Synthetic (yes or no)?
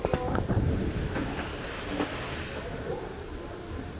no